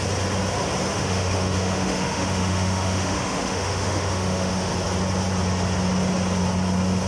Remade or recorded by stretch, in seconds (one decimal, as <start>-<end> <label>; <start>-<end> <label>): 0.0-0.9 recorded; 0.9-4.7 remade; 4.7-7.1 recorded